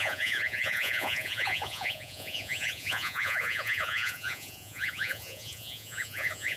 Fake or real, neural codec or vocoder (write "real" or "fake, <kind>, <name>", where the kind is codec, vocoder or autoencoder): fake, vocoder, Vocos